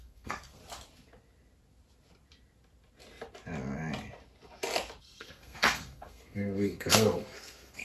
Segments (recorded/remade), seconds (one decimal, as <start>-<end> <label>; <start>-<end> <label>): 0.0-0.6 remade; 0.6-5.0 recorded; 5.0-7.8 remade